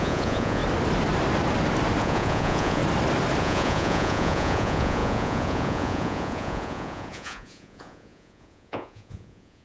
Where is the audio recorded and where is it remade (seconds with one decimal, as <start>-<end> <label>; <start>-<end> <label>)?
0.0-0.6 remade; 0.6-2.0 recorded; 2.0-2.8 remade; 2.8-3.4 recorded; 3.4-9.6 remade